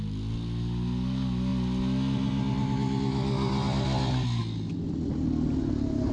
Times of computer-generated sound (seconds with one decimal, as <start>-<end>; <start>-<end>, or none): none